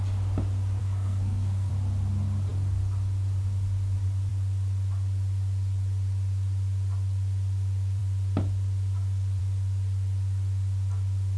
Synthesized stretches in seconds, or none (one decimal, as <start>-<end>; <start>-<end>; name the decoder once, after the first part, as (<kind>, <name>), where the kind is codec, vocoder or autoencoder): 0.8-1.7 (codec, SNAC)